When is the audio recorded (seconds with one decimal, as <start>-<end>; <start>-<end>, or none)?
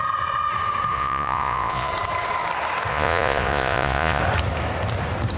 0.0-0.9; 1.9-2.9; 4.2-5.4